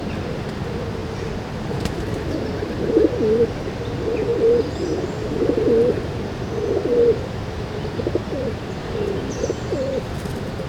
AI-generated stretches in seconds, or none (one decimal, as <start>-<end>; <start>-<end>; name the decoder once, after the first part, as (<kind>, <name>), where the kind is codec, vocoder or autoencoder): 1.0-2.2 (vocoder, BigVGAN v2); 4.3-5.1; 8.8-9.5